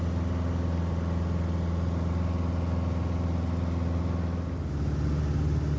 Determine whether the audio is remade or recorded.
recorded